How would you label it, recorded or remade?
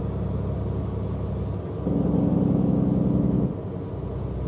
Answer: recorded